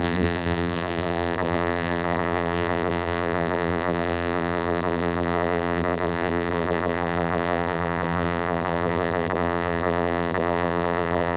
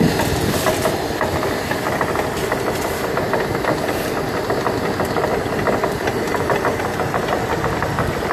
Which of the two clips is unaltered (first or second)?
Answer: second